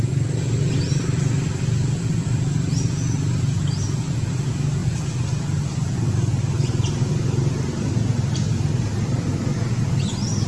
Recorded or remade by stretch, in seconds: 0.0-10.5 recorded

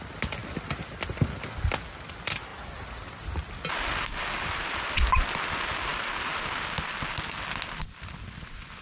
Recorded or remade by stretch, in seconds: 0.0-8.8 recorded

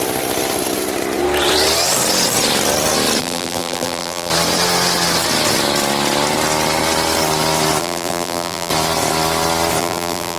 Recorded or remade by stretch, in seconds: 0.0-3.2 recorded; 3.2-4.3 remade; 4.3-7.8 recorded; 7.8-8.7 remade; 8.7-9.8 recorded; 9.8-10.4 remade